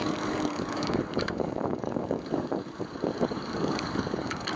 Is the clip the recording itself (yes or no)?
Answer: no